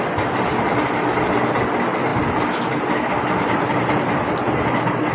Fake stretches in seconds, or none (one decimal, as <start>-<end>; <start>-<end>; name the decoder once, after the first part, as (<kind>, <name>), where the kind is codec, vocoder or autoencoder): none